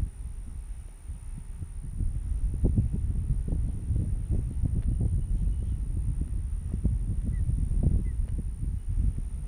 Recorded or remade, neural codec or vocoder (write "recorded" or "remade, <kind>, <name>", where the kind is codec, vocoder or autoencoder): recorded